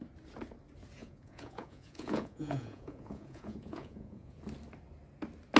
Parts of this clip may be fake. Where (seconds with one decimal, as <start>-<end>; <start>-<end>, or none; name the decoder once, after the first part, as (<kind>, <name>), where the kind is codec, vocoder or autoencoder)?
1.0-4.4 (vocoder, Vocos)